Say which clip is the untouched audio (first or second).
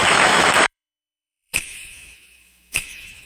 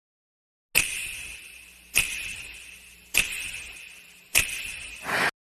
second